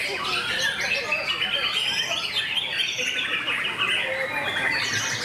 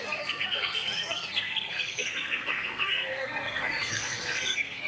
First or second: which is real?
first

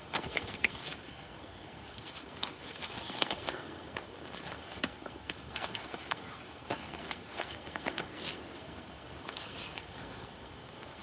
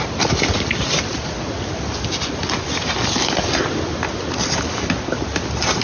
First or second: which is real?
second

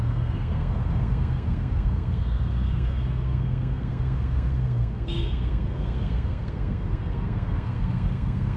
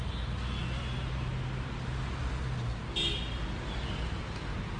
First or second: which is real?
second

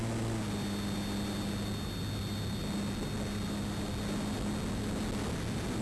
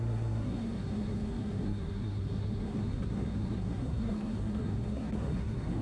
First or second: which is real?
first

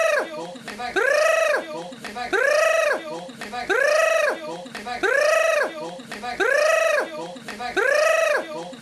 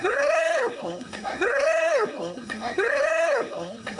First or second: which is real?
first